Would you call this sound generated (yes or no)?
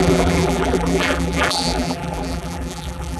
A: yes